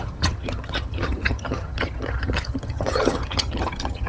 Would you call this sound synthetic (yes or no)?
yes